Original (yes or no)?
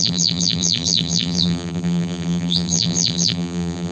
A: no